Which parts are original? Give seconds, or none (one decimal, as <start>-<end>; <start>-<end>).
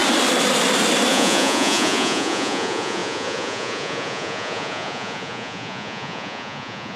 0.0-1.1